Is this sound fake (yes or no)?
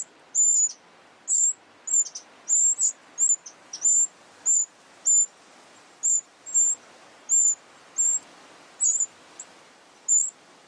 no